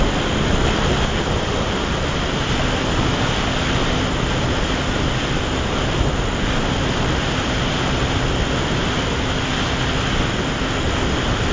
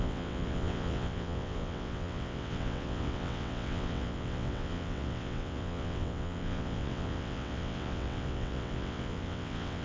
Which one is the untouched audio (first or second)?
first